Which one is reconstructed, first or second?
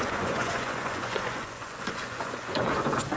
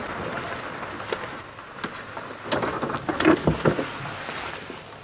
first